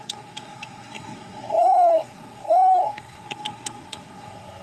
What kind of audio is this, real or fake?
fake